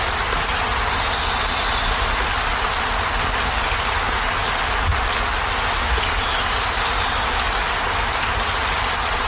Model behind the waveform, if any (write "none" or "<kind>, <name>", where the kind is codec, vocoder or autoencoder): none